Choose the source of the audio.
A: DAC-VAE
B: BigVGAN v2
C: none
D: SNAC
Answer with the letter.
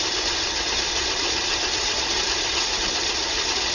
C